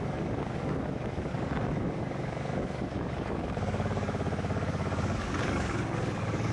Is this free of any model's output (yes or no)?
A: no